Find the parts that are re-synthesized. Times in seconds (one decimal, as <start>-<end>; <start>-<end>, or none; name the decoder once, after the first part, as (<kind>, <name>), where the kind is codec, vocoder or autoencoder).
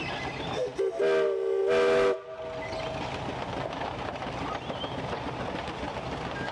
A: none